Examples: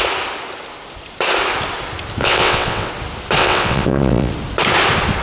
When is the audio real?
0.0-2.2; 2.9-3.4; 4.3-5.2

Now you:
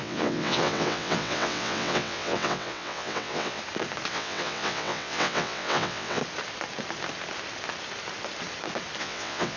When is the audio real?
3.6-4.1; 6.2-9.0

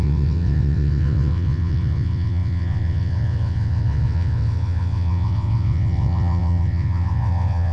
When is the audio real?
none

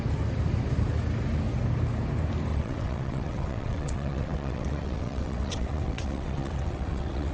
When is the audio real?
0.0-2.5